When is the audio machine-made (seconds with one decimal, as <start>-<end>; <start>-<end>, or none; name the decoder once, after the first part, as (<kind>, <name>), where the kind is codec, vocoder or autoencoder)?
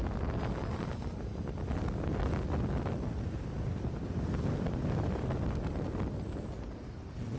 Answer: none